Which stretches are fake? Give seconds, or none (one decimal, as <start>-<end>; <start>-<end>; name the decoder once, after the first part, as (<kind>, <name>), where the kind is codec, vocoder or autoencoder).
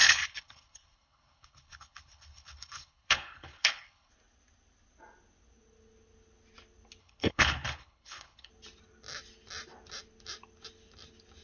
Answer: 0.0-4.1 (codec, HILCodec); 7.0-8.5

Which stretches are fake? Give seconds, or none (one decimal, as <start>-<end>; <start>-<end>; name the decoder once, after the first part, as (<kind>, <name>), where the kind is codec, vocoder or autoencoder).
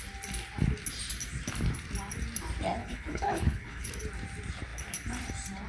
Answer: 2.8-3.9 (codec, HILCodec)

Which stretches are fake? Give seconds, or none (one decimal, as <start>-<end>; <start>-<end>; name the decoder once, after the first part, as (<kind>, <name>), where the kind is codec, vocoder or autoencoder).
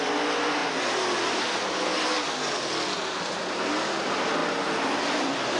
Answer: none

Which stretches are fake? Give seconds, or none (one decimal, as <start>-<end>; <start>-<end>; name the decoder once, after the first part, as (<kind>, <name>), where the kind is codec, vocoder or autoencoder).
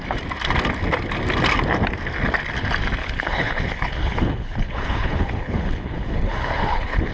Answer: 3.0-7.1 (codec, HILCodec)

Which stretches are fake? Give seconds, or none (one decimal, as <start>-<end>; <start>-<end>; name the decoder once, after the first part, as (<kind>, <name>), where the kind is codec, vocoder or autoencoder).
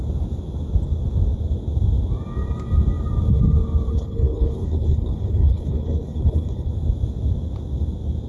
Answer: 3.9-6.7 (codec, HILCodec)